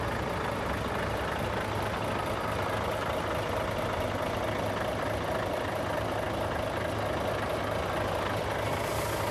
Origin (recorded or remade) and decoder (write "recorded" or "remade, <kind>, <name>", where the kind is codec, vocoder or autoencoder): recorded